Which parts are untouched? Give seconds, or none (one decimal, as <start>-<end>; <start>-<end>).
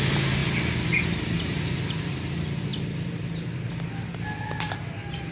0.4-1.0; 2.7-5.3